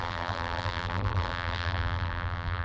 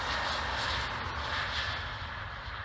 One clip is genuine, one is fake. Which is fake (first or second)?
first